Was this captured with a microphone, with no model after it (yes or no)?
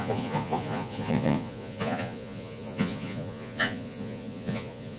no